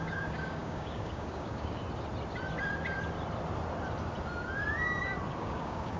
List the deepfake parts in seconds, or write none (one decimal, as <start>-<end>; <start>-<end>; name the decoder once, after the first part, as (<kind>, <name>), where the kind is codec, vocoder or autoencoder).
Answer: 0.0-1.8 (codec, DAC); 5.4-6.0